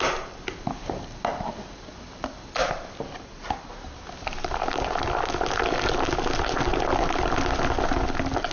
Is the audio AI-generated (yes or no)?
no